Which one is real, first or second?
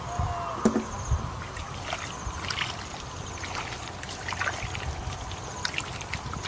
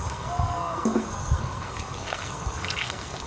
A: first